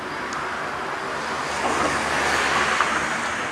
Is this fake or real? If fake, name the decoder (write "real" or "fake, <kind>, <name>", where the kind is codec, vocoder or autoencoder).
real